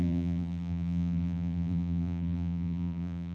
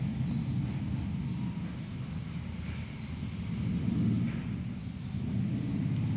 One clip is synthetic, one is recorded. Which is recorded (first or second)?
second